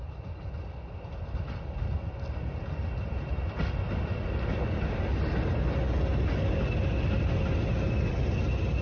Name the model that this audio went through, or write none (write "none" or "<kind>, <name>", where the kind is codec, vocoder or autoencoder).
none